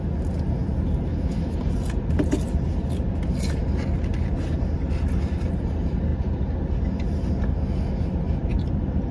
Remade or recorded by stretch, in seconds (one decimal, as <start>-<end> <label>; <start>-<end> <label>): 0.0-1.1 recorded; 1.1-1.6 remade; 1.6-9.1 recorded